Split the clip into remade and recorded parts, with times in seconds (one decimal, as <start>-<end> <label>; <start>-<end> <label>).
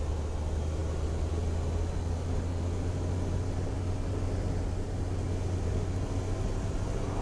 0.0-7.2 recorded